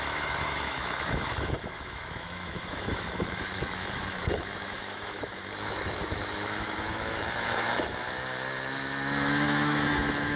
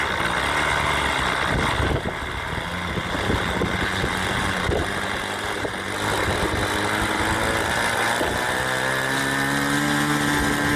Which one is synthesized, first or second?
first